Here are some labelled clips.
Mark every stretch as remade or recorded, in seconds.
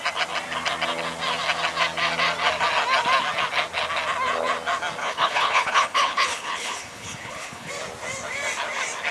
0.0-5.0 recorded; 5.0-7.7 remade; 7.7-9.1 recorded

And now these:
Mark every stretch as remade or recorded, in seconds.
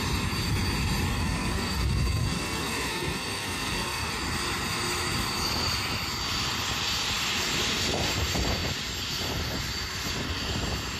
0.0-1.1 recorded; 1.1-4.1 remade; 4.1-11.0 recorded